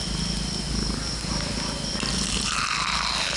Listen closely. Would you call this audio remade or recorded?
recorded